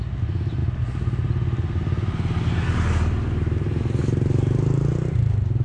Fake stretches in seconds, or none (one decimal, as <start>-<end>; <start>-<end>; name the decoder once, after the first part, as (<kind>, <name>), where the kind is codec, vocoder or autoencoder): none